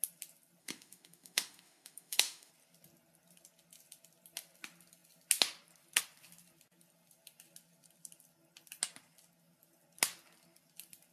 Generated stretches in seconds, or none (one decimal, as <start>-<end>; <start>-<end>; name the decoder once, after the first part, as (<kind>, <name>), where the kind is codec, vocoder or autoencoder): 0.6-2.5 (autoencoder, DAC-VAE)